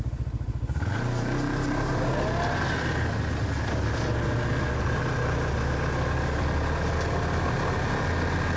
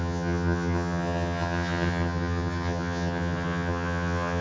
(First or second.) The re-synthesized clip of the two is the second